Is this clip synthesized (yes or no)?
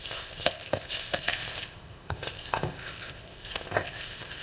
yes